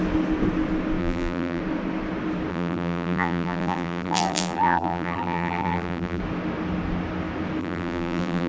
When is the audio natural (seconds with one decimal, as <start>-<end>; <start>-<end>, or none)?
0.0-1.0; 1.6-2.5; 6.2-7.6